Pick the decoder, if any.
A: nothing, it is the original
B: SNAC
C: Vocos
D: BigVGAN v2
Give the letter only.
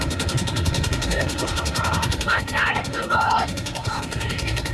B